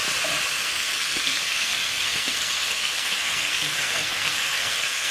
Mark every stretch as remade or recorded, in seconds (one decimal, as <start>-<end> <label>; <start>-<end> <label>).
0.0-0.5 recorded; 0.5-5.1 remade